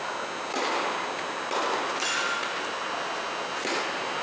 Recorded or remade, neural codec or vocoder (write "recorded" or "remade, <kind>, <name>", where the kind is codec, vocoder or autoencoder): recorded